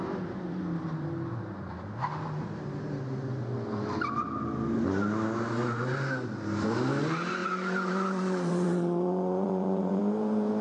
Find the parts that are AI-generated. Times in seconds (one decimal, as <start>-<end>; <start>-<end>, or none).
7.4-10.0

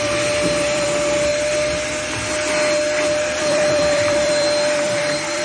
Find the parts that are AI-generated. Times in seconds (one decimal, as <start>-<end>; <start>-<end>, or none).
0.0-1.3; 3.4-5.4